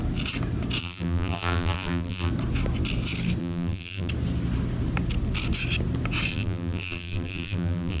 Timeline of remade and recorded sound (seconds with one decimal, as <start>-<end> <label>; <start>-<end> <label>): 0.0-0.8 recorded; 0.8-2.3 remade; 2.3-3.4 recorded; 3.4-4.1 remade; 4.1-6.3 recorded; 6.3-8.0 remade